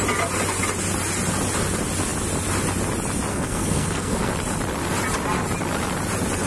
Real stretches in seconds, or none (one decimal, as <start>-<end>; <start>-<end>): 0.0-3.3; 4.3-6.5